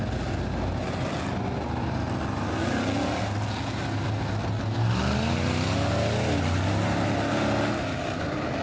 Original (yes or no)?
yes